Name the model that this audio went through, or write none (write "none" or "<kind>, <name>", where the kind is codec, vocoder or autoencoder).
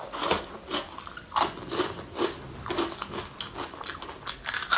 none